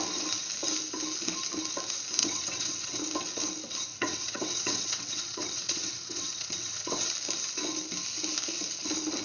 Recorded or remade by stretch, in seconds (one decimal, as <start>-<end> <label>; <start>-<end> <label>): 0.0-2.2 recorded; 2.2-3.0 remade; 3.0-3.9 recorded; 3.9-7.1 remade; 7.1-9.2 recorded